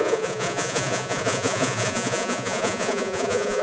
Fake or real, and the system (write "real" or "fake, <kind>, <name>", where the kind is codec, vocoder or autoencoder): fake, vocoder, Vocos